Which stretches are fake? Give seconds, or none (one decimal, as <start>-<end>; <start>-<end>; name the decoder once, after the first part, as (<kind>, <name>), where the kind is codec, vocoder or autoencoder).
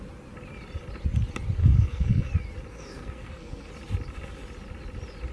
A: 1.6-2.3 (codec, SNAC); 2.7-3.7